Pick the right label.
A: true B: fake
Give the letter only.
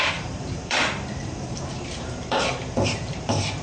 B